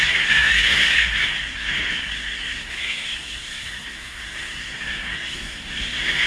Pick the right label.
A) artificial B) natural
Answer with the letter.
A